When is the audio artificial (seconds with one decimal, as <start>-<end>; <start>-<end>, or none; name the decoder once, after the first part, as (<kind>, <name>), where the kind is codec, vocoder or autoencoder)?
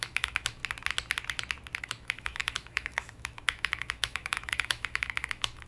0.0-0.6 (autoencoder, DAC-VAE); 1.8-5.7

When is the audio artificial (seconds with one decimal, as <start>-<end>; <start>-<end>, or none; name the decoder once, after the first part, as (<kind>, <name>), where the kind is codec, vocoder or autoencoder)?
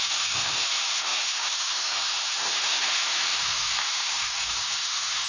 0.0-5.3 (autoencoder, DAC-VAE)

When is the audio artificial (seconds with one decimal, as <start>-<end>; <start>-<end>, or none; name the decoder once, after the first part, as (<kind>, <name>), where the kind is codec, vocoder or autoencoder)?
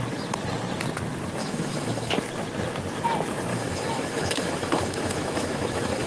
1.4-2.1 (autoencoder, DAC-VAE); 3.5-6.1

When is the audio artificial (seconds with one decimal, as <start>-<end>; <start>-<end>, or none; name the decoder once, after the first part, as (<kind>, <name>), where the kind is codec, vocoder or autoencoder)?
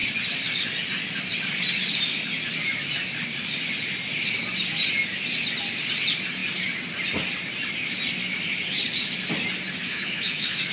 9.8-10.7 (autoencoder, DAC-VAE)